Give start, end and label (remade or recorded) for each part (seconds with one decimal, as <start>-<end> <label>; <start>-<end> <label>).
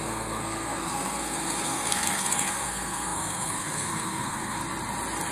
0.0-4.6 remade; 4.6-5.3 recorded